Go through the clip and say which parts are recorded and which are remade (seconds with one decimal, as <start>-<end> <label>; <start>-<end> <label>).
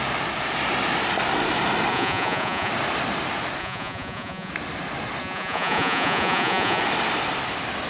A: 0.0-1.9 recorded; 1.9-2.7 remade; 2.7-3.6 recorded; 3.6-4.5 remade; 4.5-5.2 recorded; 5.2-6.8 remade; 6.8-7.9 recorded